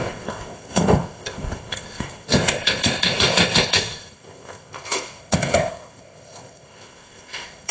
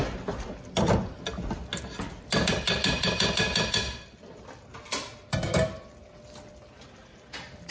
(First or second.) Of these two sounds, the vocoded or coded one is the first